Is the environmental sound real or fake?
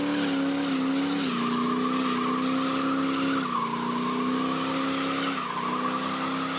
real